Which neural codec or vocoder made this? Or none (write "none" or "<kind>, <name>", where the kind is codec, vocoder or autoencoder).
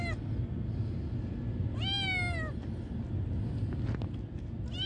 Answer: none